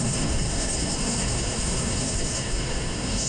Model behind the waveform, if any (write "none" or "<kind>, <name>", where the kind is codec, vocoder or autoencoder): codec, SNAC